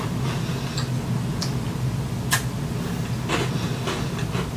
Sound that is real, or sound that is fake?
real